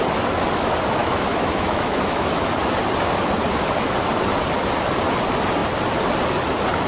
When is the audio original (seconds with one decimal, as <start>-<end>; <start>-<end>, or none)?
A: 0.0-1.0; 2.5-6.9